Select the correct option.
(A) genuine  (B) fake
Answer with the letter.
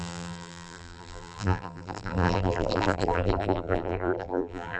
B